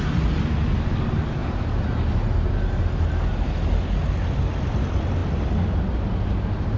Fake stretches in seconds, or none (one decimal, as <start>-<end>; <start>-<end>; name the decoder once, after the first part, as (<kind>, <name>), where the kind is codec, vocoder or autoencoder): none